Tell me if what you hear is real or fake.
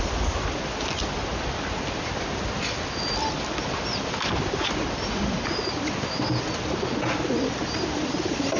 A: real